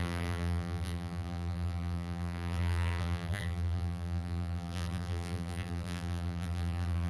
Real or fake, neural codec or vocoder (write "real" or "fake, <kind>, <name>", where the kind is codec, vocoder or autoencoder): fake, vocoder, BigVGAN v2